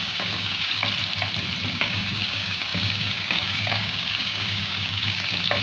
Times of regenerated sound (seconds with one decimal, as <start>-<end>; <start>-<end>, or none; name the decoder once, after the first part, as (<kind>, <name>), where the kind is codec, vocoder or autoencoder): 0.0-0.8 (codec, DAC); 1.7-5.6